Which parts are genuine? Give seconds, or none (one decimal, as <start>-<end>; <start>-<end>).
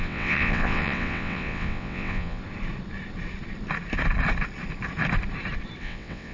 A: 2.4-5.8